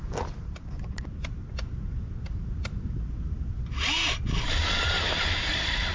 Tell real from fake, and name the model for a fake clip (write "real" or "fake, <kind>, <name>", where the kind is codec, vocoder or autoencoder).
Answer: real